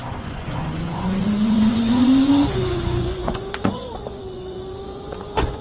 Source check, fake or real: fake